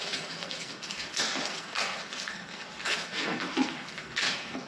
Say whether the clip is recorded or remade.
remade